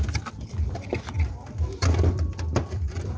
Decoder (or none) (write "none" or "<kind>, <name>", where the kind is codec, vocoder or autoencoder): none